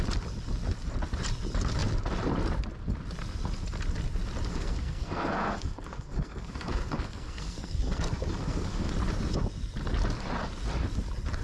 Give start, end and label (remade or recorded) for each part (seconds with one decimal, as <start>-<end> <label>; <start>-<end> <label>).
0.0-4.5 recorded; 4.5-8.9 remade; 8.9-11.4 recorded